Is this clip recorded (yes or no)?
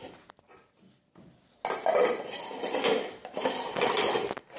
yes